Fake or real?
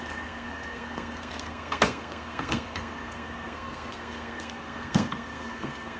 fake